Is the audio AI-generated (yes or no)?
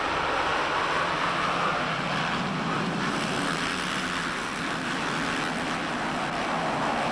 no